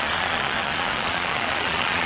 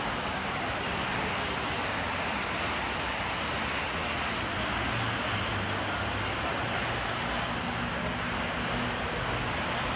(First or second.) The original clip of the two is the second